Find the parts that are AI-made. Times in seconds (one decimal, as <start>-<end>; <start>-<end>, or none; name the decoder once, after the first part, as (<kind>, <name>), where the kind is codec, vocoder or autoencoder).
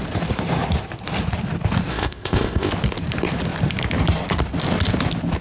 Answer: 1.9-2.7 (codec, ZipCodec)